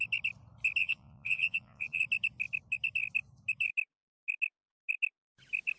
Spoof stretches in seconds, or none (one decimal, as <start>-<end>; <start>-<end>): 0.8-2.0